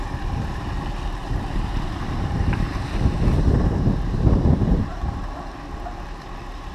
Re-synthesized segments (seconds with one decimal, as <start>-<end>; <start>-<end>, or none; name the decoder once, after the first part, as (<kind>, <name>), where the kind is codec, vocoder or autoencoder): 1.2-5.2 (vocoder, BigVGAN v2)